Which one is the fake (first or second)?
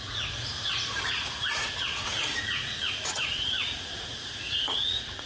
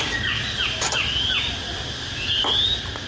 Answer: first